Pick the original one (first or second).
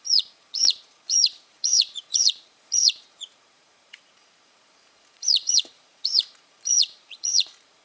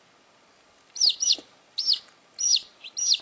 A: second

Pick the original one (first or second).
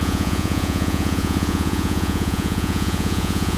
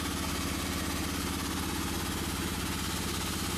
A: second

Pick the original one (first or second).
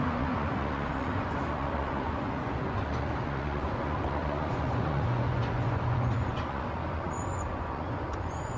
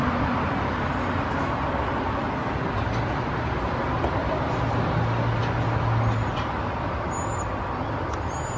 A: second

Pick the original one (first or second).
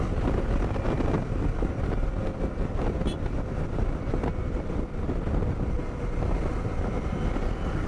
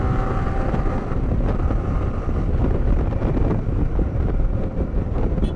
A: first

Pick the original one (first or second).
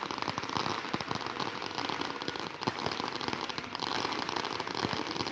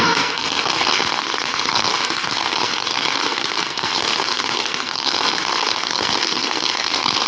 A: first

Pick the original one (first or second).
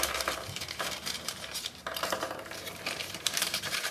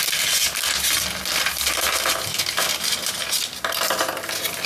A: second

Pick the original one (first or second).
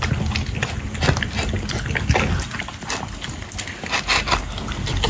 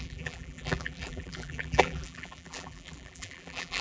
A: first